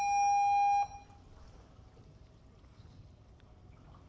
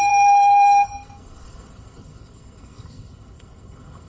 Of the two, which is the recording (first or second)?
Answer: first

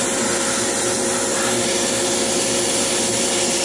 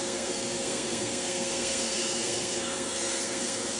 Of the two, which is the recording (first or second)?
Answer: first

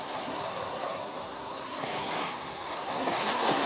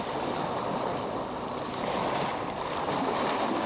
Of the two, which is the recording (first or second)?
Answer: second